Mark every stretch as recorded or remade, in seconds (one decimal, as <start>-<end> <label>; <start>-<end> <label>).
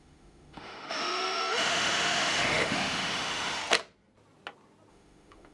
0.0-3.6 remade; 3.6-4.9 recorded; 4.9-5.5 remade